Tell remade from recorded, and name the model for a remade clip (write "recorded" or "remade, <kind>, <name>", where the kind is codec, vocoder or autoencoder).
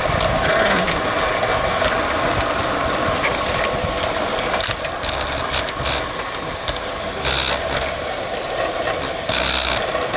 recorded